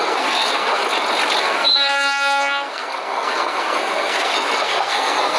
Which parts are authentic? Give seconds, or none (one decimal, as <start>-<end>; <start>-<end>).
0.8-1.4